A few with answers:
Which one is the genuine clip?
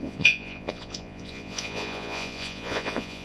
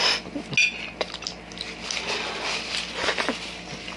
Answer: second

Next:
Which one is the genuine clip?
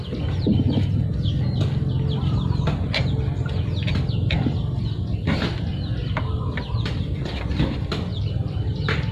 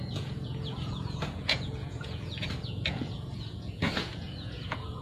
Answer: first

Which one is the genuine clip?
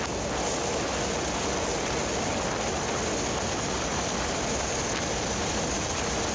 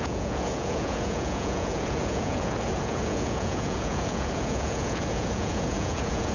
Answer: first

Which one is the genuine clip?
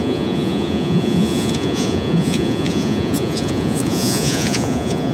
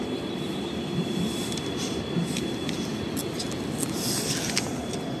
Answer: second